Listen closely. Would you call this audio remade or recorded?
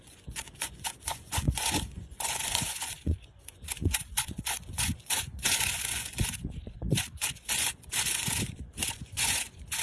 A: remade